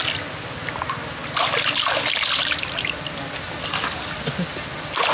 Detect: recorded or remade recorded